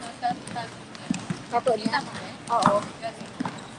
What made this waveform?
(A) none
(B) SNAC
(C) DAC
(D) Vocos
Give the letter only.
A